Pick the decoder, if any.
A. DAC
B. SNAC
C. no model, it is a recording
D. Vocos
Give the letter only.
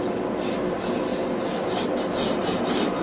C